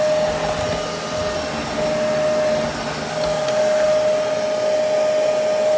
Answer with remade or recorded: recorded